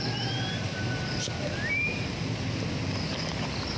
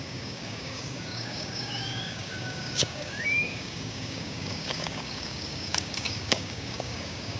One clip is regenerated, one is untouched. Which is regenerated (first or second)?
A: second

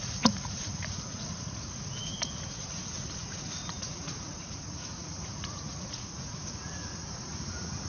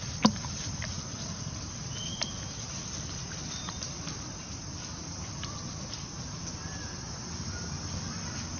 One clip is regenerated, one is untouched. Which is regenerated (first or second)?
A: first